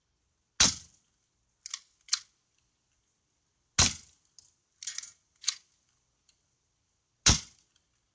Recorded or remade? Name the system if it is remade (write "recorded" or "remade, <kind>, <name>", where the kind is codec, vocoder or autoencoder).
recorded